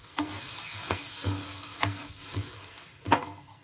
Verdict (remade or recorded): remade